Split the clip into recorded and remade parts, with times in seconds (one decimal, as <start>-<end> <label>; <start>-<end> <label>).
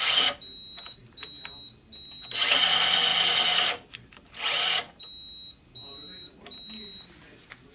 0.0-7.7 recorded